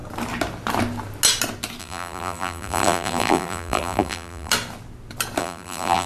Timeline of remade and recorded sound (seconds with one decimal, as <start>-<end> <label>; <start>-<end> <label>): 0.0-1.8 recorded; 1.8-4.5 remade; 4.5-5.4 recorded; 5.4-6.1 remade